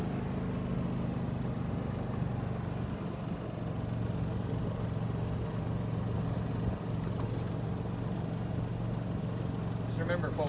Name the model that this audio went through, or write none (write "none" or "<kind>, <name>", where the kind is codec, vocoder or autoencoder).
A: none